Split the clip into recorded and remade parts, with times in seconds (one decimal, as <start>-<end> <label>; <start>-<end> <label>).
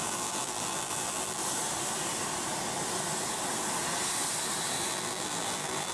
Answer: 0.0-1.4 remade; 1.4-4.9 recorded; 4.9-5.9 remade